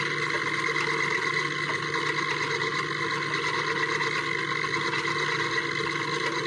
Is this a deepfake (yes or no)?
no